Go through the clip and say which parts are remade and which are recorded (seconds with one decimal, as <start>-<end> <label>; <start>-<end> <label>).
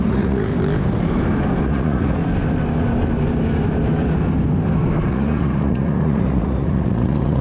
0.0-0.5 remade; 0.5-1.6 recorded; 1.6-2.2 remade; 2.2-5.1 recorded; 5.1-7.4 remade